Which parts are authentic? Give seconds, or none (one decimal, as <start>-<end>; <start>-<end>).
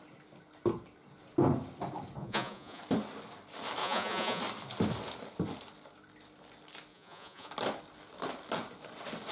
0.0-2.2; 2.8-3.8; 4.4-6.9; 7.5-9.3